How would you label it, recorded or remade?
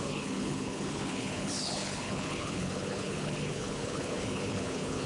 remade